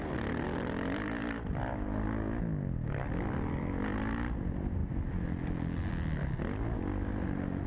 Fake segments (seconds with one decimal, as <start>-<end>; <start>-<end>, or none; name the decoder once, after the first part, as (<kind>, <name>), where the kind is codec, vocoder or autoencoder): none